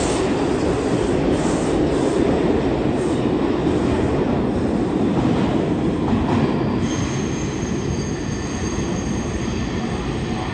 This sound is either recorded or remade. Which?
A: recorded